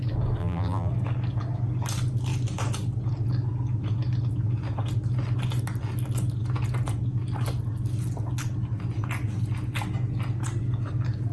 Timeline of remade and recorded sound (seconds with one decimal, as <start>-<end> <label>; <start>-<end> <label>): 0.0-0.4 recorded; 0.4-0.9 remade; 0.9-11.3 recorded